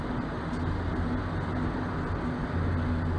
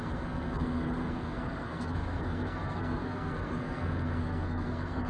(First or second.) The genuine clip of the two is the first